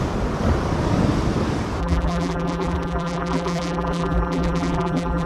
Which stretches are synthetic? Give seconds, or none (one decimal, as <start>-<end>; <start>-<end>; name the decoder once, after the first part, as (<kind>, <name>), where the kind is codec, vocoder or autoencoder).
1.8-5.3 (vocoder, BigVGAN v2)